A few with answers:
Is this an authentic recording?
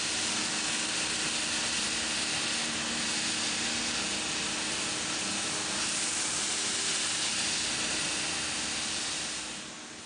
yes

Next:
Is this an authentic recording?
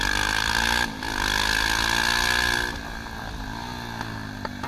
yes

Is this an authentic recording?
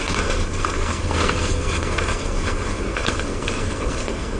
no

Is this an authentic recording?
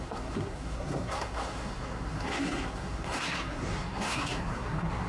no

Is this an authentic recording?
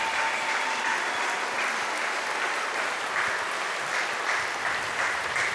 yes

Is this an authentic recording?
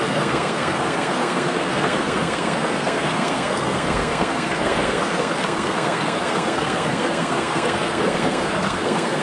no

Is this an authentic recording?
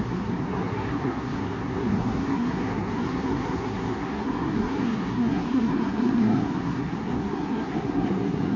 no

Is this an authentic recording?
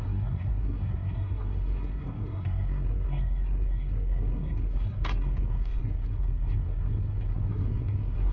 no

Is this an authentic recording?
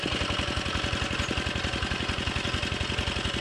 yes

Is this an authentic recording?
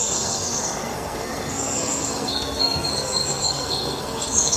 no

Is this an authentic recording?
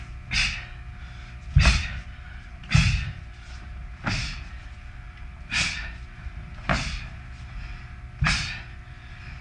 yes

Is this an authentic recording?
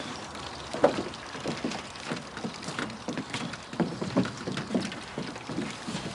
yes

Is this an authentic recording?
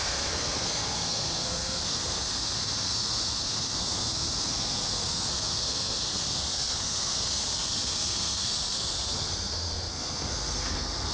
no